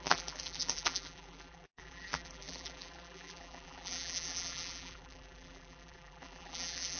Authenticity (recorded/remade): remade